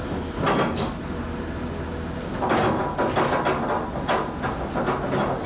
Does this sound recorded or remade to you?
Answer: recorded